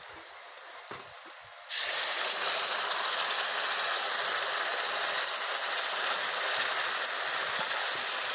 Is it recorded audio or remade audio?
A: recorded